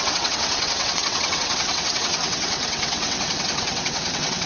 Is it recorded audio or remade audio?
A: remade